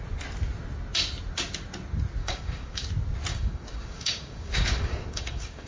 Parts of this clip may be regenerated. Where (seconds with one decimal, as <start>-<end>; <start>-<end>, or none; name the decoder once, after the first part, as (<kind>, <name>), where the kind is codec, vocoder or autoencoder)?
2.2-2.9 (codec, DAC); 3.3-5.7